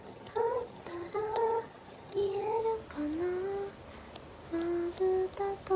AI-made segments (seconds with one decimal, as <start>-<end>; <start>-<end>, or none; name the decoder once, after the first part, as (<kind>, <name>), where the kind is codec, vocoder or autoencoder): 0.0-2.6 (vocoder, HiFi-GAN)